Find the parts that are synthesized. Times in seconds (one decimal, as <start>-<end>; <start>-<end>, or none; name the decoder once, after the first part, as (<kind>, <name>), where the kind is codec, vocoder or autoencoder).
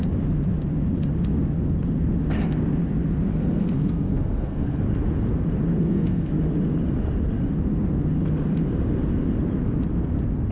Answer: 3.3-4.8 (codec, SNAC); 5.8-6.3